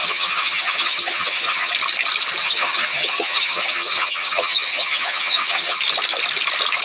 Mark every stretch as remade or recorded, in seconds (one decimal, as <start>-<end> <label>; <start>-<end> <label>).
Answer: 0.0-1.7 remade; 1.7-2.4 recorded; 2.4-5.8 remade; 5.8-6.8 recorded